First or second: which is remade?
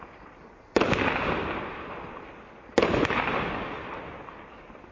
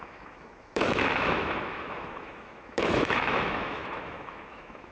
second